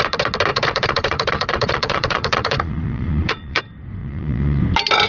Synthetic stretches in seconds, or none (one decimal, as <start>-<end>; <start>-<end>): 0.5-3.6; 4.0-4.6